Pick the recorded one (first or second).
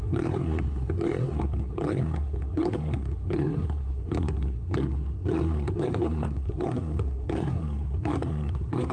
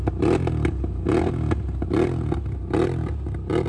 second